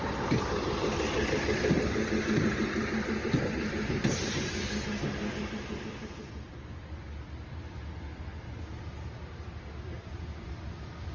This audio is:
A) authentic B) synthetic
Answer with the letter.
A